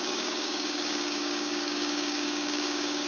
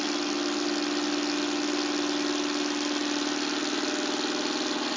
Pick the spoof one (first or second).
first